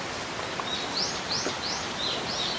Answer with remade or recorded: recorded